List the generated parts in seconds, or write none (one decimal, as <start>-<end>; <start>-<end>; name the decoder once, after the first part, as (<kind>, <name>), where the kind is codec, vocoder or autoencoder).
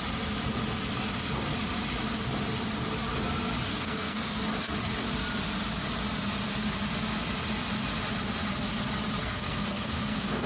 3.7-4.4 (codec, SNAC); 9.2-10.5